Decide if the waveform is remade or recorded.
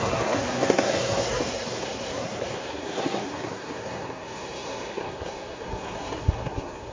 remade